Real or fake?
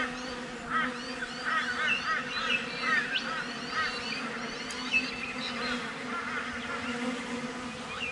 real